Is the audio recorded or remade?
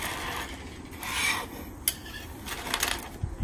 recorded